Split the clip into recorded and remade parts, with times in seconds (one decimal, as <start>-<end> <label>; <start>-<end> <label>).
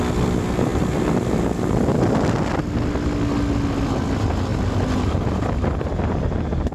0.0-0.7 recorded; 0.7-2.4 remade; 2.4-4.5 recorded; 4.5-6.1 remade; 6.1-6.7 recorded